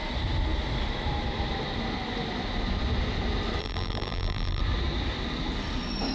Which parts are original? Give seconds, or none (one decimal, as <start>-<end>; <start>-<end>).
0.0-3.6; 4.6-6.1